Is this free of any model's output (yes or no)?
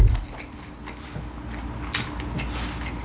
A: yes